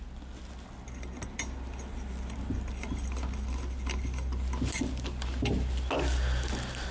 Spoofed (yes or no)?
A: no